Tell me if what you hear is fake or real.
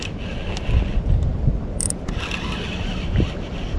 real